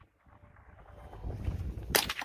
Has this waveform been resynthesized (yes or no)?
no